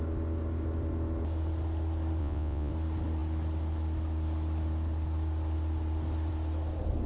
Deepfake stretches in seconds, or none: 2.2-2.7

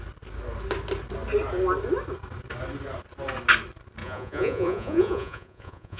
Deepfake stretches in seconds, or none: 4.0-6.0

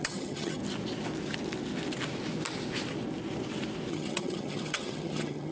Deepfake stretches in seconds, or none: 0.0-0.6; 3.9-5.5

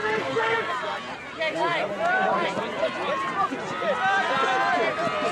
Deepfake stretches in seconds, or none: 0.0-0.7

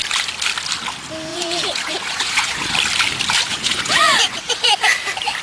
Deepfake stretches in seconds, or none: 1.3-2.7; 3.5-4.7